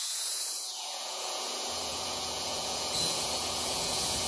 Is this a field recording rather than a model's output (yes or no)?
no